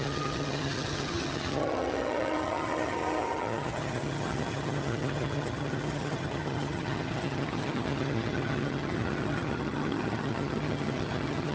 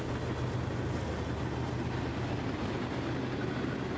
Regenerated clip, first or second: first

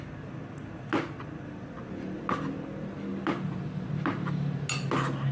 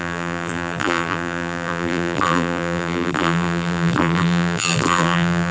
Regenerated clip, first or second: second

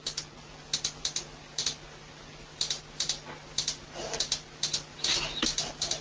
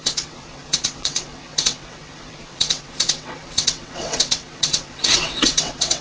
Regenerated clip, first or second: second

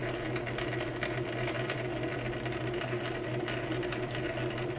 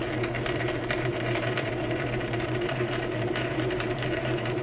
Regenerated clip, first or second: second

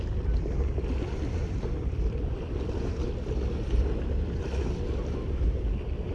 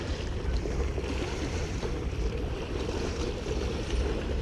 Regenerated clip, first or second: second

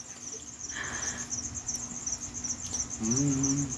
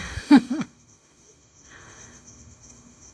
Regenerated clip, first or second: second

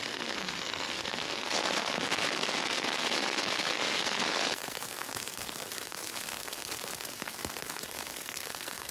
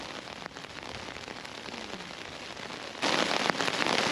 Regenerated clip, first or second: first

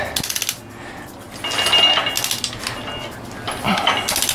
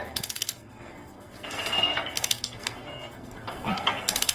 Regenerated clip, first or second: second